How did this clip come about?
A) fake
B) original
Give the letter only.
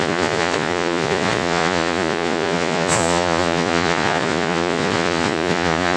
A